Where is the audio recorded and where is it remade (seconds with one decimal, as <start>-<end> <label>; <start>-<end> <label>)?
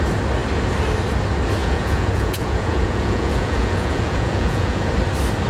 0.0-1.6 recorded; 1.6-4.9 remade; 4.9-5.5 recorded